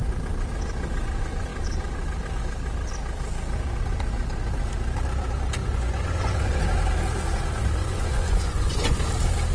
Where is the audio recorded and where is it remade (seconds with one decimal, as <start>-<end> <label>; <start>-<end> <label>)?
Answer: 0.0-5.6 recorded; 5.6-6.6 remade; 6.6-7.8 recorded; 7.8-9.0 remade; 9.0-9.5 recorded